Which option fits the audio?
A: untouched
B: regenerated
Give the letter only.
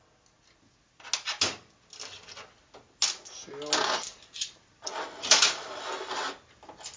A